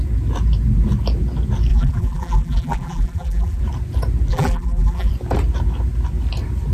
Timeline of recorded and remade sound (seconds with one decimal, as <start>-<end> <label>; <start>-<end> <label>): 0.0-1.7 recorded; 1.7-3.6 remade; 3.6-4.3 recorded; 4.3-5.1 remade; 5.1-6.7 recorded